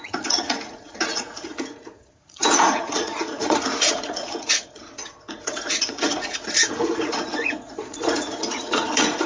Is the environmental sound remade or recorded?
remade